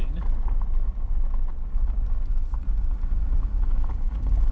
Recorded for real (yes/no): yes